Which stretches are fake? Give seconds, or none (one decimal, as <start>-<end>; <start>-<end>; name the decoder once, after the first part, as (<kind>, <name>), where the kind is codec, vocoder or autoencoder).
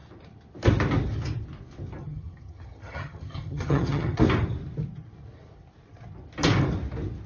2.0-4.2 (vocoder, HiFi-GAN)